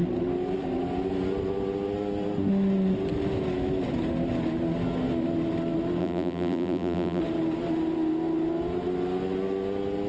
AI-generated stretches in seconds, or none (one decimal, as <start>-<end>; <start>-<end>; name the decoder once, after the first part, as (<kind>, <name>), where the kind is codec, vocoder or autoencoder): 6.0-7.2 (vocoder, BigVGAN v2)